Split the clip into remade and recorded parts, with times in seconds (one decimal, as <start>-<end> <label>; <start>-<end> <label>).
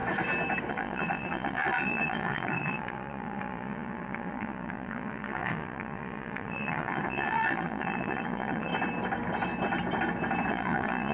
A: 0.0-0.7 recorded; 0.7-8.7 remade; 8.7-10.5 recorded; 10.5-11.1 remade